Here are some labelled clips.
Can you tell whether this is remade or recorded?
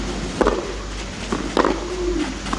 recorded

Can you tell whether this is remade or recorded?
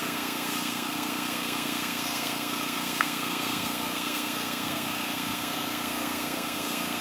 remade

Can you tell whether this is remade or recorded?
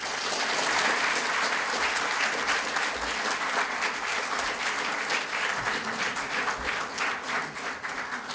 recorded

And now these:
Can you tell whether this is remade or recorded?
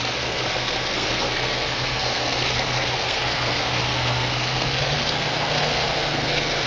remade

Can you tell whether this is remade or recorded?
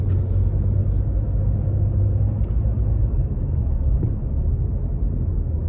recorded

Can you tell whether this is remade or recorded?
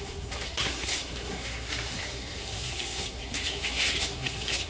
remade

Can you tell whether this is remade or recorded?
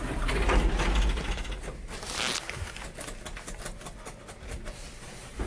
recorded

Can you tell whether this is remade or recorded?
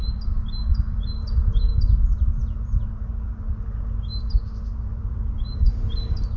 recorded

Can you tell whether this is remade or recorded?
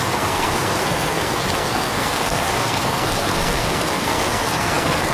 remade